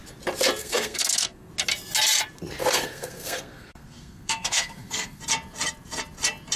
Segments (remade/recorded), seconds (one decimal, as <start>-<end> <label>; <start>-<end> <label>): 0.0-0.6 recorded; 0.6-1.5 remade; 1.5-2.6 recorded; 2.6-5.2 remade; 5.2-6.6 recorded